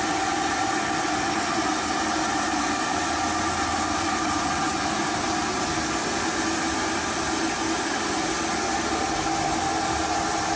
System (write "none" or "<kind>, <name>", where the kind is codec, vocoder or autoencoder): none